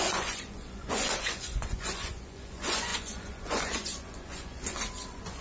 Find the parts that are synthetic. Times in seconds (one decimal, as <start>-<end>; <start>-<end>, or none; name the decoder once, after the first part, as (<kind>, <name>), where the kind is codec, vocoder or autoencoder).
0.0-5.4 (vocoder, Vocos)